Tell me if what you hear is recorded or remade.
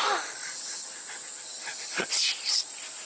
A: recorded